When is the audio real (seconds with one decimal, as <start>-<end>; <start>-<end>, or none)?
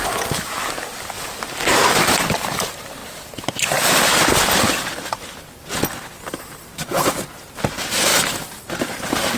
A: 0.0-8.1; 8.8-9.4